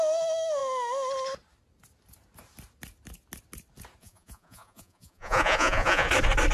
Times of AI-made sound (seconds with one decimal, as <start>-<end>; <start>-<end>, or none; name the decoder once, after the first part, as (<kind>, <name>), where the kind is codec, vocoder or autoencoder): 4.0-6.1 (vocoder, Vocos)